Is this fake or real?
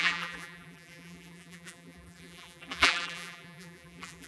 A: fake